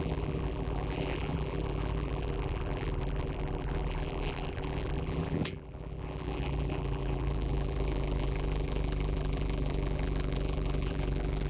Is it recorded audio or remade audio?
remade